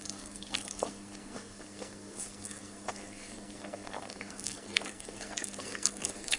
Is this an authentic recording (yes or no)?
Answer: no